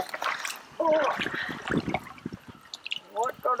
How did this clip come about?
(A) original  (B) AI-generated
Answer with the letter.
A